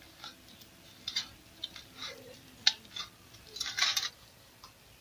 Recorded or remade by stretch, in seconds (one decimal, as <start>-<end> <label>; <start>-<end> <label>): 0.0-5.0 recorded